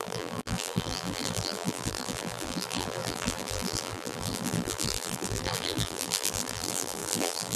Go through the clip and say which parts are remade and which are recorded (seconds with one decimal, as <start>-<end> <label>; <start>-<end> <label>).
0.0-7.6 remade